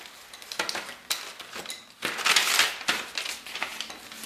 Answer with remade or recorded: recorded